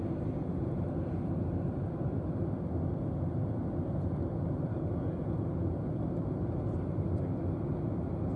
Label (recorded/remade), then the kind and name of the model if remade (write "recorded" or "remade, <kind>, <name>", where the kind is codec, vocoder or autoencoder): recorded